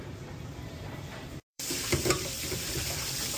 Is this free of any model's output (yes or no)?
no